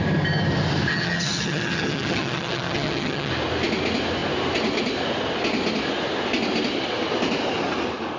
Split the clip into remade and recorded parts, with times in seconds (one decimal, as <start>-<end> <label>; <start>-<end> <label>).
0.0-0.9 recorded; 0.9-3.3 remade; 3.3-8.2 recorded